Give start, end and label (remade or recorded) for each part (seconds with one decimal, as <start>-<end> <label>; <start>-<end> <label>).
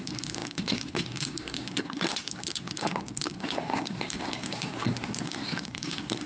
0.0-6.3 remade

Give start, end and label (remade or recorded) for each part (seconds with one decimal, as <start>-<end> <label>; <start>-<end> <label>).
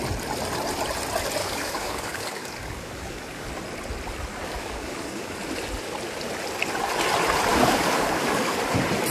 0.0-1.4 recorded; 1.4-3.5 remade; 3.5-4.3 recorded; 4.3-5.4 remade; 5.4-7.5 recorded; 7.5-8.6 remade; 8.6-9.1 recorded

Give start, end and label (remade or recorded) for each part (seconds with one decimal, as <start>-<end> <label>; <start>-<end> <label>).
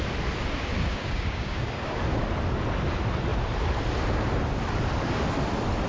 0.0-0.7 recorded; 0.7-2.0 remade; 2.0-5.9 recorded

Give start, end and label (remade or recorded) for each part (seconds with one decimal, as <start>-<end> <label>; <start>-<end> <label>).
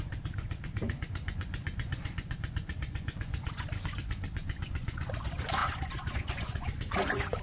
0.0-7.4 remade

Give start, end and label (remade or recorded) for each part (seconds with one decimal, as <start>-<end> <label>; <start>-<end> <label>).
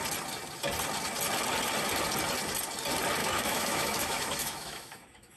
0.0-3.2 recorded; 3.2-5.4 remade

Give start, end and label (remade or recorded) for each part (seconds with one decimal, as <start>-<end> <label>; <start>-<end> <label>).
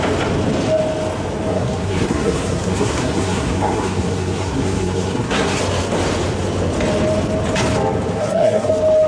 0.0-1.5 recorded; 1.5-5.6 remade; 5.6-8.2 recorded; 8.2-8.7 remade; 8.7-9.1 recorded